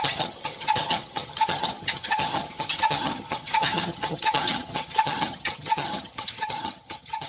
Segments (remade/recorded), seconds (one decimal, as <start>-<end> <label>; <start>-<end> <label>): 0.0-7.3 remade